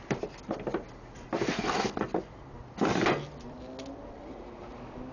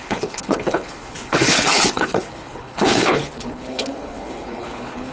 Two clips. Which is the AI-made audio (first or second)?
second